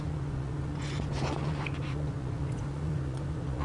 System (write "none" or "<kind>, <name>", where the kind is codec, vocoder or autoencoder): vocoder, Vocos